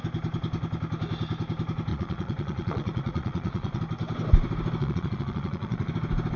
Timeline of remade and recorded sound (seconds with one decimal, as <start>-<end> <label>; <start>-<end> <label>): 0.0-1.9 recorded; 1.9-3.8 remade; 3.8-4.8 recorded; 4.8-5.9 remade; 5.9-6.4 recorded